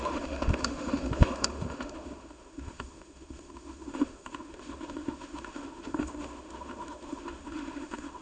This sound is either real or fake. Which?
fake